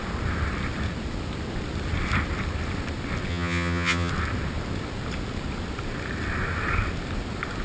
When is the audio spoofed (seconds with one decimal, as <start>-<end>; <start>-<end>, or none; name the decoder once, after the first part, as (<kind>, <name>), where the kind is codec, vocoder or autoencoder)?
3.3-4.1 (vocoder, HiFi-GAN)